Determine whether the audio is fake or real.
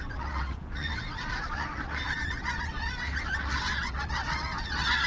fake